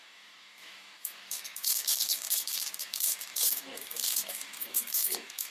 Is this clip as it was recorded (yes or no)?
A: no